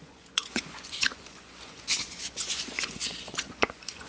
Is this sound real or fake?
fake